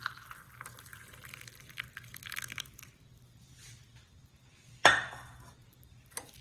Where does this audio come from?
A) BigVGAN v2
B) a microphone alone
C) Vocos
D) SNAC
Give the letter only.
B